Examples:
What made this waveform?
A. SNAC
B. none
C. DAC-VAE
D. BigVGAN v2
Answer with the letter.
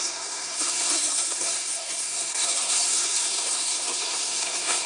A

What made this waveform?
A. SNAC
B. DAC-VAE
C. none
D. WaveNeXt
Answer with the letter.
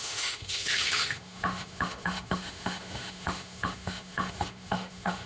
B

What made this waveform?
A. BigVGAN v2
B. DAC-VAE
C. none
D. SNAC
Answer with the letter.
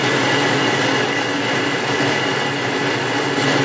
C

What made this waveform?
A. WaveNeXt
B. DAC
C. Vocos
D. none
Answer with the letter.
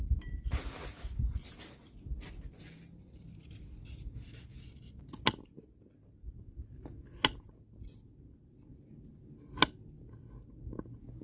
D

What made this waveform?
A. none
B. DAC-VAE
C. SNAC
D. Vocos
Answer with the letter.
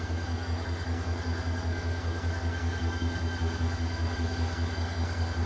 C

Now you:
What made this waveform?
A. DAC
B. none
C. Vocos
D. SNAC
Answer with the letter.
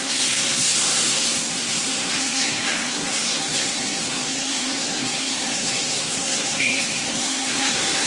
D